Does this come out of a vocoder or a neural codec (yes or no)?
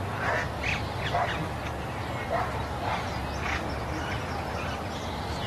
no